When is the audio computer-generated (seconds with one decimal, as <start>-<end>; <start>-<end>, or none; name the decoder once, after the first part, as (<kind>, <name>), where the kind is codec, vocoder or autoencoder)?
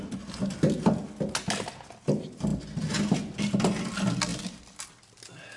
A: none